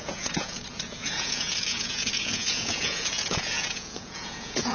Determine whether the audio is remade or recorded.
remade